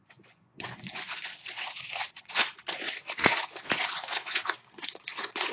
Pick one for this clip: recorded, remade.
remade